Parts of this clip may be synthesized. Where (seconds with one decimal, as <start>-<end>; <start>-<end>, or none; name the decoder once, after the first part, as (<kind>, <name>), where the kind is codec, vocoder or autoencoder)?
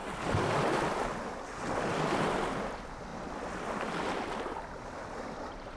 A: 0.0-0.9 (vocoder, BigVGAN v2)